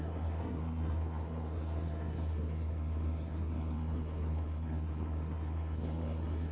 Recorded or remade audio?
remade